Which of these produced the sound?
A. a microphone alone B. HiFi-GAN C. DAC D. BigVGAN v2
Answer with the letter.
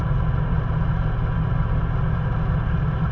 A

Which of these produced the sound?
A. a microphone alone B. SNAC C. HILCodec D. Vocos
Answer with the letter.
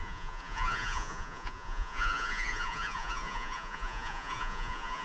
D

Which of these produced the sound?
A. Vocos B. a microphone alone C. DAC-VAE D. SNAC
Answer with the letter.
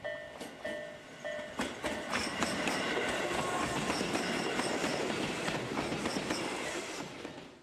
B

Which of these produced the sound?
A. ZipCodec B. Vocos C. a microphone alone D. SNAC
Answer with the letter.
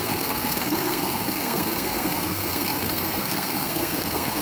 D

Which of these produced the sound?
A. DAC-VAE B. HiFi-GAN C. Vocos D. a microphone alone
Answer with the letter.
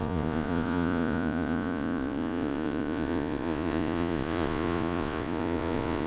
C